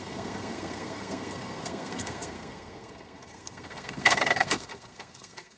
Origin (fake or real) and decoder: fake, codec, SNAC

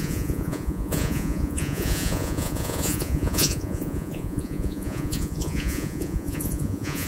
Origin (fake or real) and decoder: fake, vocoder, Vocos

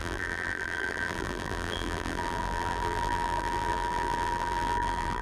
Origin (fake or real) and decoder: fake, vocoder, BigVGAN v2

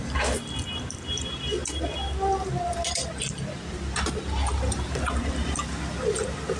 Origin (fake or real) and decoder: real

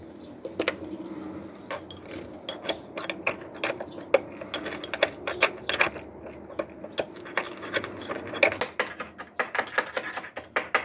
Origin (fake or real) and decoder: real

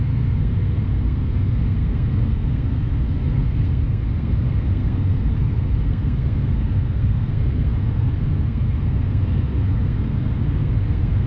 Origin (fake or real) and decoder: fake, codec, SNAC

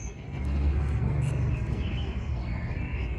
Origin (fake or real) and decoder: fake, codec, SNAC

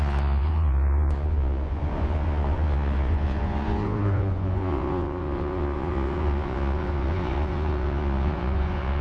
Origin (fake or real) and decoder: fake, vocoder, Vocos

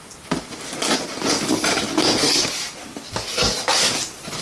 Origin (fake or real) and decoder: real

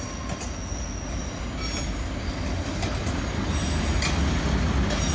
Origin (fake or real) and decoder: real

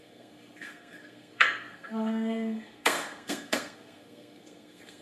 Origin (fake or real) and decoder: fake, codec, SNAC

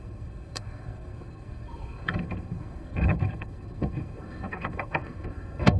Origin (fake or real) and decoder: fake, codec, SNAC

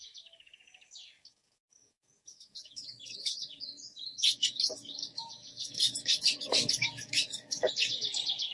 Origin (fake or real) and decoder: fake, codec, DAC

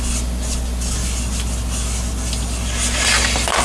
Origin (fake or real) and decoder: real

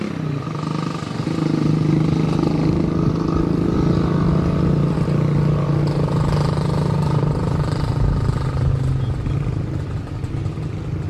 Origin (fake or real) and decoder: real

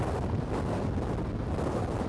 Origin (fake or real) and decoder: real